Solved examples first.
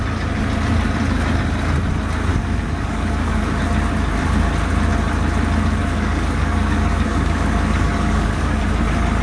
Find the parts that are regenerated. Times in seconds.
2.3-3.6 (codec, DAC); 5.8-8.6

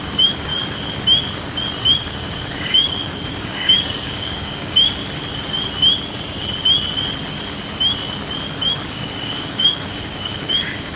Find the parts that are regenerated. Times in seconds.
0.0-0.5 (codec, DAC); 1.8-5.0; 8.6-11.0

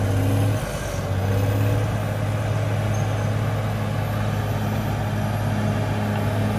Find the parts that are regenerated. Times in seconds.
none

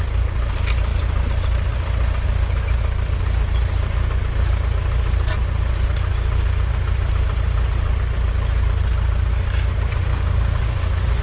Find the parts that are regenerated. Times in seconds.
10.1-11.2 (codec, DAC)

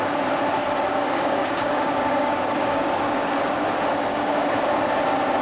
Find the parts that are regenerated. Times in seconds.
0.9-3.3 (codec, DAC); 4.1-4.6

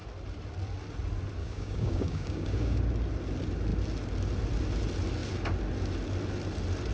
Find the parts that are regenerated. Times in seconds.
1.4-2.8 (codec, DAC)